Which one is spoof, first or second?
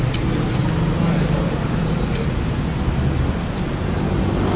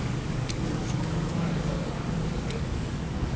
second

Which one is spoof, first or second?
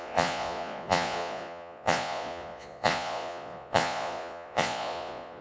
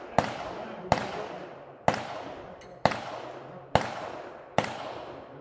first